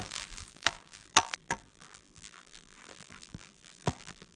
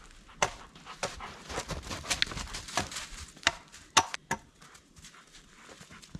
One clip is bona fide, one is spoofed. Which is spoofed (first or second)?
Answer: first